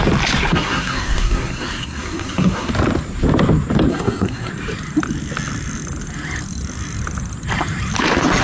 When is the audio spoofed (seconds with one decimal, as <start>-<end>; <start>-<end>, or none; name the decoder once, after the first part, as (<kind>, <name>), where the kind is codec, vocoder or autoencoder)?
0.5-2.7 (codec, SNAC); 3.9-4.5